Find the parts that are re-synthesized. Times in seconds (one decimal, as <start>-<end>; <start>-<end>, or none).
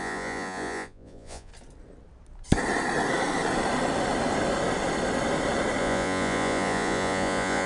0.0-1.5; 5.8-7.7